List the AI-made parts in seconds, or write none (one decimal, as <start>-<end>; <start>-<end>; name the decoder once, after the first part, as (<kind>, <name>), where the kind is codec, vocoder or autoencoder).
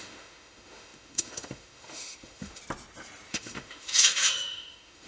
0.0-2.6 (autoencoder, DAC-VAE); 3.3-5.1